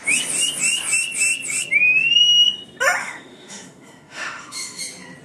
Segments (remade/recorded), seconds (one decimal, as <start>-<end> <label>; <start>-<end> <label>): 0.0-3.0 recorded; 3.0-4.8 remade; 4.8-5.2 recorded